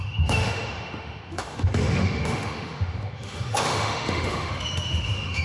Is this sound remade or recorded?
remade